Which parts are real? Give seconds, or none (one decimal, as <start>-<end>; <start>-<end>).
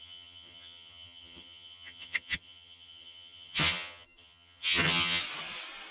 5.2-5.9